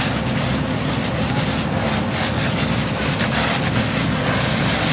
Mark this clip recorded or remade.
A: recorded